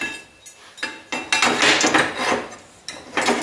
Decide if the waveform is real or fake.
real